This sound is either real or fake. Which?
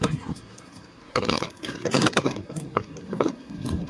fake